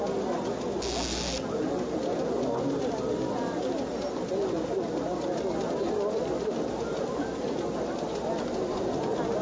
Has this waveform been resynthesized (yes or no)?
no